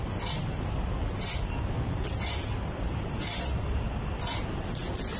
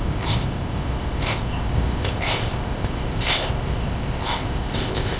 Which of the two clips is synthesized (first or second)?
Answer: second